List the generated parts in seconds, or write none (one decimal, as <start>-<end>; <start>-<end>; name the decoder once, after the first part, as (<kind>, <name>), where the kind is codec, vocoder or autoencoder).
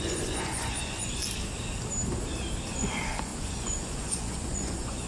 0.0-1.2 (vocoder, Vocos); 2.7-5.1